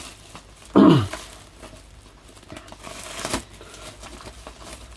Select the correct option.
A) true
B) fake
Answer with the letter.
A